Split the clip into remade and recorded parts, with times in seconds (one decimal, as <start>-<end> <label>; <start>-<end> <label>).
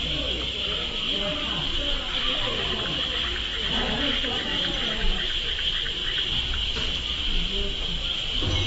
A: 0.0-4.5 recorded; 4.5-5.5 remade; 5.5-8.7 recorded